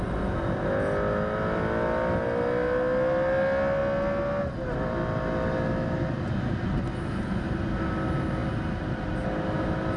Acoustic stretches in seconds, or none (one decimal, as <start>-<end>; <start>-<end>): 0.0-10.0